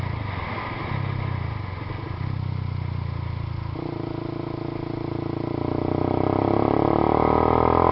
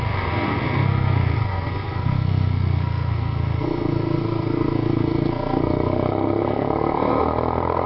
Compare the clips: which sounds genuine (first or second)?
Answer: first